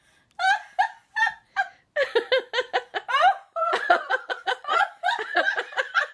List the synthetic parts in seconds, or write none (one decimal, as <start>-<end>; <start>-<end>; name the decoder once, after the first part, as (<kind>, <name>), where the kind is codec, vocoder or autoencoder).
3.6-6.1 (vocoder, Vocos)